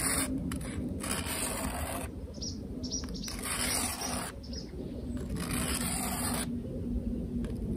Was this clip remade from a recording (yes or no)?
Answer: no